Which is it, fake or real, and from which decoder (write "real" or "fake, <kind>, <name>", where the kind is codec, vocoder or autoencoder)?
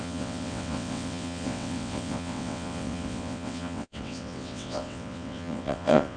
fake, vocoder, WaveNeXt